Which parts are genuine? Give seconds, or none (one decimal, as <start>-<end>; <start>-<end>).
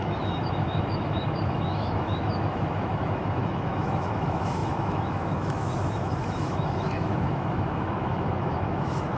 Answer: none